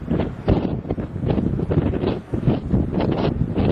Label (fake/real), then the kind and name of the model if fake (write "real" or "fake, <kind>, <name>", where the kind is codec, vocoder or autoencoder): real